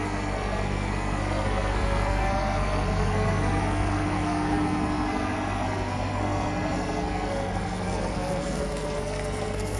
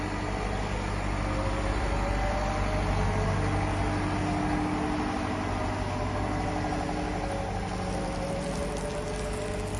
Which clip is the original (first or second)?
second